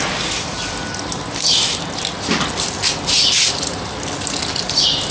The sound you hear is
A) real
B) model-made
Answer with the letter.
A